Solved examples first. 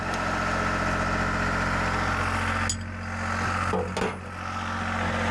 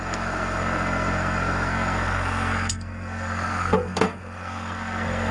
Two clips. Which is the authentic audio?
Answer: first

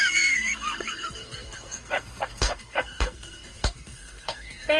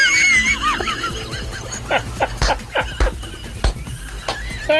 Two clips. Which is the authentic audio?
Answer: second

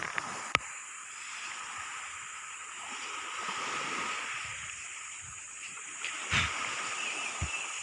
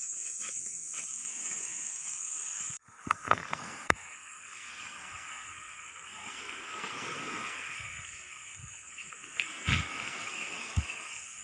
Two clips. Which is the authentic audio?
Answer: first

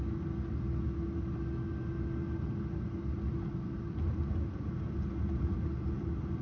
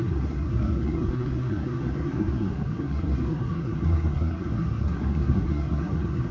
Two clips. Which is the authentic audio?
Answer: first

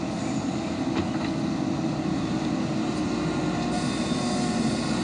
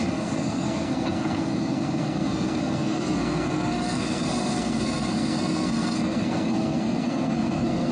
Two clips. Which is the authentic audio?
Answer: first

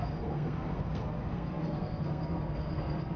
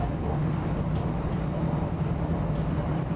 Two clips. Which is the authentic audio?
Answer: second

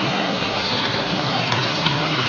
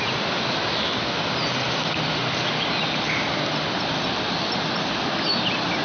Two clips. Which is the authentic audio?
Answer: second